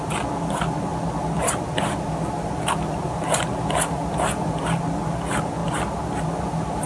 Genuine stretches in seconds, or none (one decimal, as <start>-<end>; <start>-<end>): 0.0-6.9